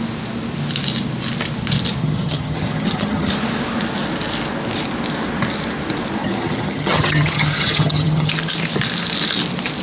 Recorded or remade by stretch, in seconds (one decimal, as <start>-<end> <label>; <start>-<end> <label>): 0.0-2.0 recorded; 2.0-3.3 remade; 3.3-6.2 recorded; 6.2-8.3 remade; 8.3-9.8 recorded